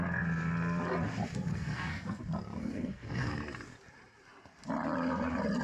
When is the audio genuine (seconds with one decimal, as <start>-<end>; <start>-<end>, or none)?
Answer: 0.0-1.5; 2.2-2.6; 3.4-5.6

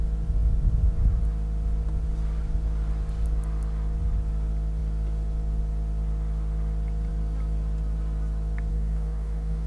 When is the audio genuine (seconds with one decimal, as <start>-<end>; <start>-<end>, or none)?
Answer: 0.0-8.7

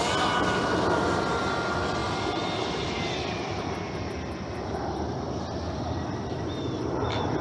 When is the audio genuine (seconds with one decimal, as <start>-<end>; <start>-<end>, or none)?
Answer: 0.0-2.0; 6.4-7.4

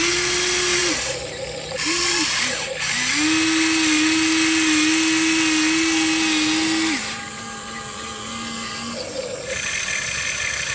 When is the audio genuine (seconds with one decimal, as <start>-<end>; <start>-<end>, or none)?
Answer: 0.0-10.7